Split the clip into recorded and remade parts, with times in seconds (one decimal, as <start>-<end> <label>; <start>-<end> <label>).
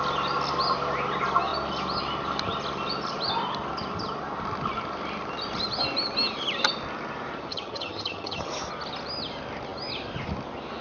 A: 0.0-7.5 recorded; 7.5-8.5 remade; 8.5-10.8 recorded